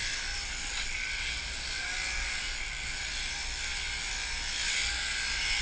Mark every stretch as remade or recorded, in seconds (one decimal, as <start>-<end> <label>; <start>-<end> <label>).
0.0-5.6 recorded